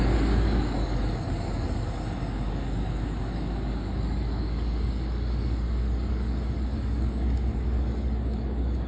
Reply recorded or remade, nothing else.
remade